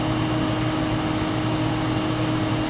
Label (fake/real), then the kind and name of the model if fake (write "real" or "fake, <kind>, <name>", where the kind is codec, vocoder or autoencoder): real